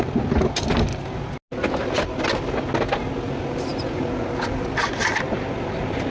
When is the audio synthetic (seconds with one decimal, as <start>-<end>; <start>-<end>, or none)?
none